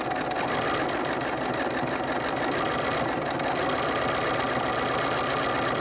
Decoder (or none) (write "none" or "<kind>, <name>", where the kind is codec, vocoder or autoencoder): none